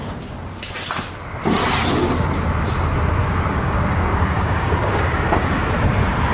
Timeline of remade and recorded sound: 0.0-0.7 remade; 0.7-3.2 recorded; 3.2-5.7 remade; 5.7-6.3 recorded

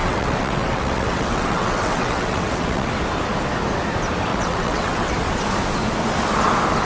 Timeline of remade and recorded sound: 0.0-2.9 remade; 2.9-4.3 recorded; 4.3-5.1 remade; 5.1-6.8 recorded

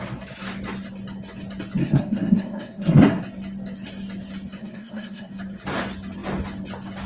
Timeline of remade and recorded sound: 0.0-1.8 recorded; 1.8-3.2 remade; 3.2-4.6 recorded; 4.6-5.3 remade; 5.3-7.1 recorded

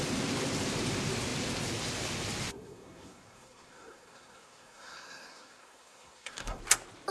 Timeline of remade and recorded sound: 0.0-2.5 recorded; 2.5-6.6 remade; 6.6-7.1 recorded